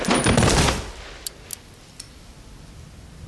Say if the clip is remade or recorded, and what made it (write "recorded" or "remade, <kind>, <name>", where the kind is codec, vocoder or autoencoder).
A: recorded